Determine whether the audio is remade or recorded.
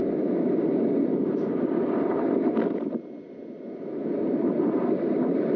recorded